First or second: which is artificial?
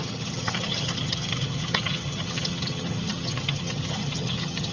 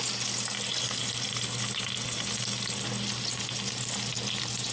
first